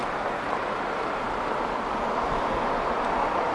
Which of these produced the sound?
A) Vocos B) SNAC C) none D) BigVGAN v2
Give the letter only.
C